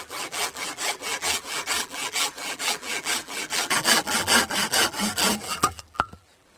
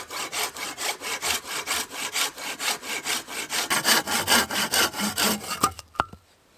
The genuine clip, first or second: second